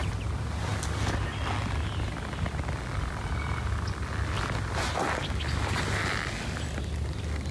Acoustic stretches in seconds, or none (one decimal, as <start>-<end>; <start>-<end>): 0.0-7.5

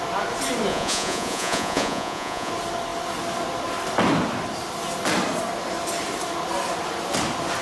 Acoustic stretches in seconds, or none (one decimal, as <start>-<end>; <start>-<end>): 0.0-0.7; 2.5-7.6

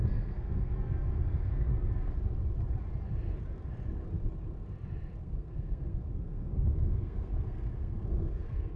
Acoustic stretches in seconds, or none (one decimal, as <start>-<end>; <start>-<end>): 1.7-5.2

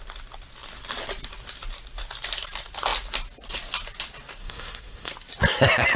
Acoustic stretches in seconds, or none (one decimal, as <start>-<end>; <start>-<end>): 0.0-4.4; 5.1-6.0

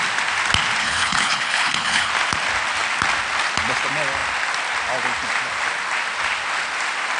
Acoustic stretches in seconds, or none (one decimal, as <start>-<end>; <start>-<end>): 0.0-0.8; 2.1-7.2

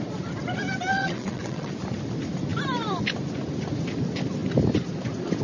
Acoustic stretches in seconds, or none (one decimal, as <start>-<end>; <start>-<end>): 0.0-0.9; 1.7-5.4